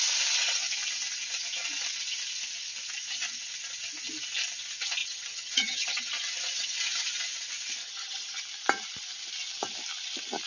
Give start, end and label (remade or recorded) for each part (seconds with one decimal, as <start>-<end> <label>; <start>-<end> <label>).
0.0-5.0 recorded; 5.0-6.1 remade; 6.1-7.8 recorded; 7.8-8.4 remade; 8.4-10.5 recorded